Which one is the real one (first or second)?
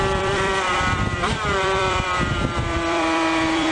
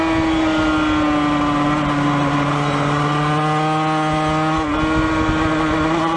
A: second